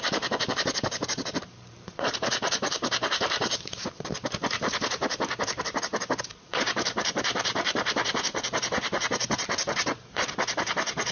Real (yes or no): no